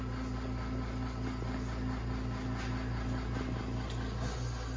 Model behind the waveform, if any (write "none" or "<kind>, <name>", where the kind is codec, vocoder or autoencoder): none